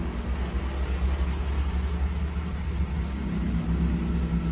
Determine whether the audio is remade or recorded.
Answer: recorded